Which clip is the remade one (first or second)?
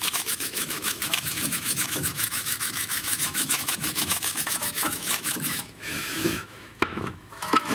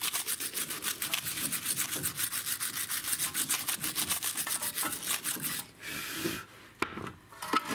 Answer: first